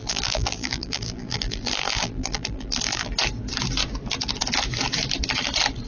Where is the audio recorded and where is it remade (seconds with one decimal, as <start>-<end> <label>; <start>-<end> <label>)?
0.0-3.1 remade; 3.1-5.9 recorded